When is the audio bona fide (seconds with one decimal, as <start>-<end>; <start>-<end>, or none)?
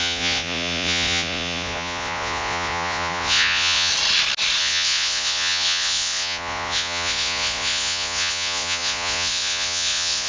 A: 3.9-4.6